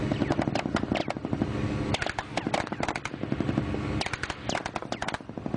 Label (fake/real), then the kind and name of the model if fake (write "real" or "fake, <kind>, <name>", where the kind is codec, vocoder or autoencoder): real